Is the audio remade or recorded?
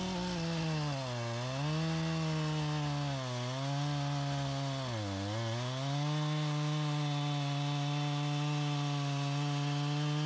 recorded